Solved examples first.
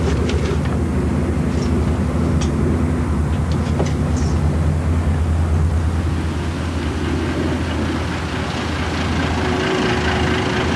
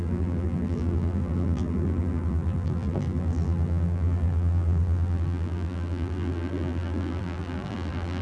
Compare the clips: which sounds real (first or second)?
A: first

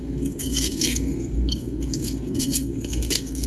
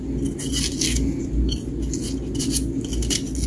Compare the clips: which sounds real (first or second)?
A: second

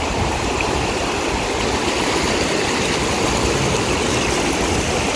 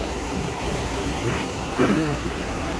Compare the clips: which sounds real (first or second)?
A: first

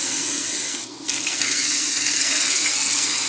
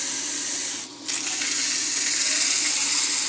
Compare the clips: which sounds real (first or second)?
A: second